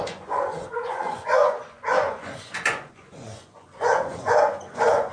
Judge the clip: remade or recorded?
remade